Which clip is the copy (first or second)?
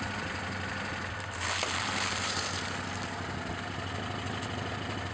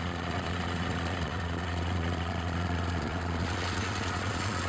second